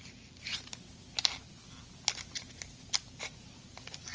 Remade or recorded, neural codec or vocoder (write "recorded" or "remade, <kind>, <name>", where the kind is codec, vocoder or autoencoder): recorded